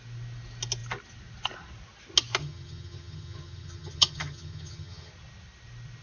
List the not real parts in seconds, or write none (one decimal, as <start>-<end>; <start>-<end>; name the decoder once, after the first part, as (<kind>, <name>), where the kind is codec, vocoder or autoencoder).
2.4-5.1 (vocoder, HiFi-GAN)